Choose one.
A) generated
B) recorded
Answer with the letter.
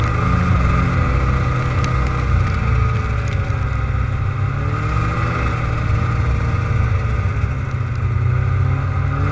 B